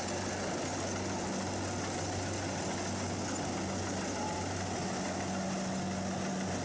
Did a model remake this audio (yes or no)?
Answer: no